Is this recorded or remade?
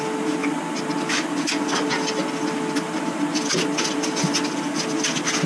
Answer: recorded